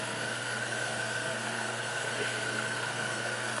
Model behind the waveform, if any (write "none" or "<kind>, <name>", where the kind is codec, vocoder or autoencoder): codec, SNAC